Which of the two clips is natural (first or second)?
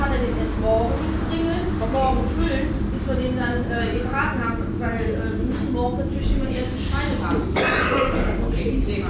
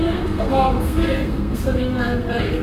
first